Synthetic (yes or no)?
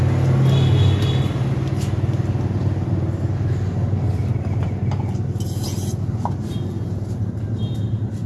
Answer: no